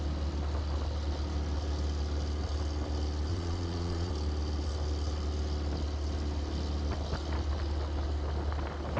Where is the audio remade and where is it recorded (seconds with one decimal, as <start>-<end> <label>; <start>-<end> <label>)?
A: 0.0-3.3 recorded; 3.3-4.1 remade; 4.1-9.0 recorded